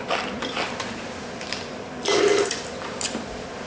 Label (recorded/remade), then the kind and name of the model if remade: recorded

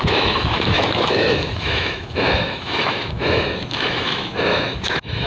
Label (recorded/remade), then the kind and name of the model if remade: remade, autoencoder, DAC-VAE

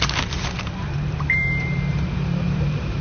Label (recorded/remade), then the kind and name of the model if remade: remade, vocoder, BigVGAN v2